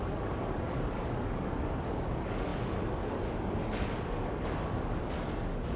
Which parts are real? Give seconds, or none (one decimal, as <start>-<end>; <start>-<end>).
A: none